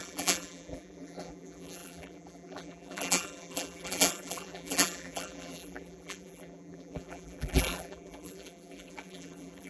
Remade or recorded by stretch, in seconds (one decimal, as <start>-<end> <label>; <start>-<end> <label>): 0.0-9.7 remade